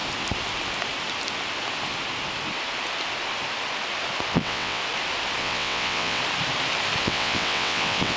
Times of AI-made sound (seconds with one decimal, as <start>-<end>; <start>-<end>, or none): 4.3-4.8; 5.4-6.2; 7.0-8.2